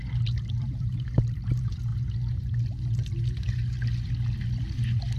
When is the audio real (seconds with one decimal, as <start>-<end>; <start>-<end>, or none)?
1.9-5.2